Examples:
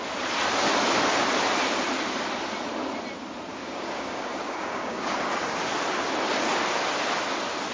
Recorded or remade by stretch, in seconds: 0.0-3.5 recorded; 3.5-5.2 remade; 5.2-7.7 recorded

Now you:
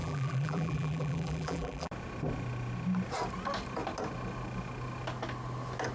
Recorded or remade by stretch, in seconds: 0.0-1.9 remade; 1.9-5.9 recorded

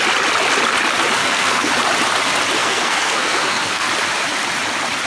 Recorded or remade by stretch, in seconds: 0.0-1.2 recorded; 1.2-1.7 remade; 1.7-2.6 recorded; 2.6-3.9 remade; 3.9-5.1 recorded